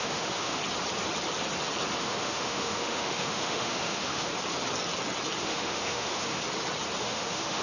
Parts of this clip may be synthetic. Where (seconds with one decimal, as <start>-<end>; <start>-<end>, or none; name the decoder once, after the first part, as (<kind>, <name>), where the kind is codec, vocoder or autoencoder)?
0.0-0.6 (autoencoder, DAC-VAE); 2.0-4.3; 5.4-6.4; 7.0-7.6